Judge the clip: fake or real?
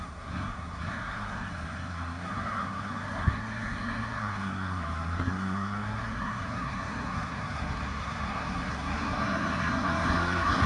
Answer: fake